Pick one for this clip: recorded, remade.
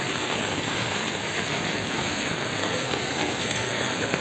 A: remade